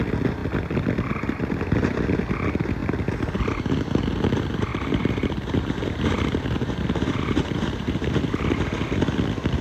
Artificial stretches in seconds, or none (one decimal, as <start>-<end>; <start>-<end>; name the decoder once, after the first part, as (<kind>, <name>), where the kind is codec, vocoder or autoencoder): 4.7-8.6 (vocoder, BigVGAN v2)